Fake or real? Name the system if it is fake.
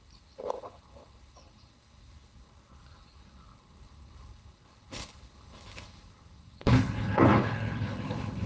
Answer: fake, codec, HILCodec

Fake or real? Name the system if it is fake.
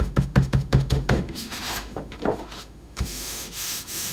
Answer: fake, autoencoder, DAC-VAE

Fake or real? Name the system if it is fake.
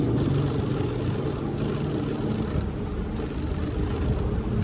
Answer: real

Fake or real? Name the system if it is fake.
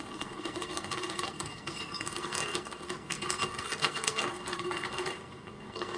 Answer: fake, codec, SNAC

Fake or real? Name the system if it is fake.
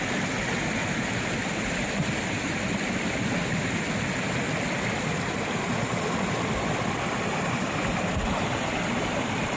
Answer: real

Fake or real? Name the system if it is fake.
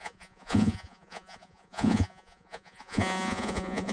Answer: fake, vocoder, Vocos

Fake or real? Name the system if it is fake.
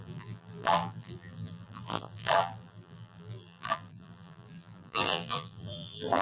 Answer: fake, vocoder, BigVGAN v2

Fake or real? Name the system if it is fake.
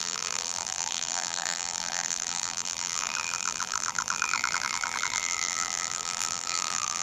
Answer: fake, vocoder, BigVGAN v2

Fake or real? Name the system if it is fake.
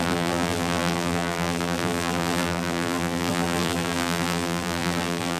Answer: fake, vocoder, BigVGAN v2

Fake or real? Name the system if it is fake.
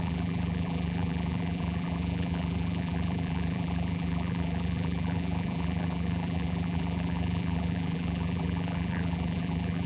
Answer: fake, vocoder, BigVGAN v2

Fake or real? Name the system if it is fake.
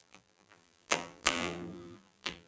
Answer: fake, vocoder, BigVGAN v2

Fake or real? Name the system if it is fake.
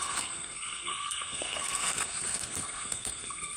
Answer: fake, codec, SNAC